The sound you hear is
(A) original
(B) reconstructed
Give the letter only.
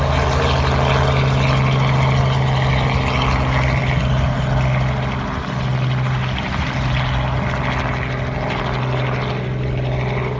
A